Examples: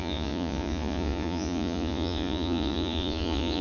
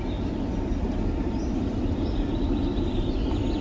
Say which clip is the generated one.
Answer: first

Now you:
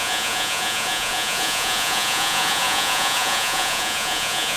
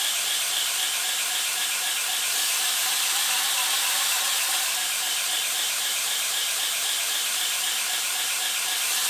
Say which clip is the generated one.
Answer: first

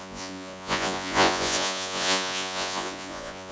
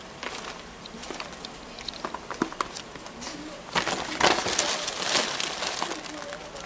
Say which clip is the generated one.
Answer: first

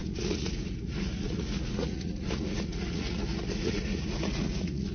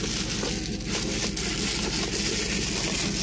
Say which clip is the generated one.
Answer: first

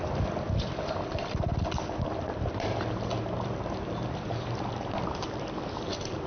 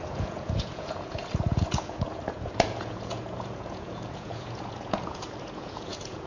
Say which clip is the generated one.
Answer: second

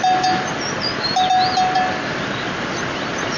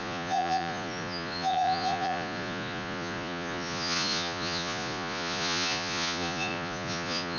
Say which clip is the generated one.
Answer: second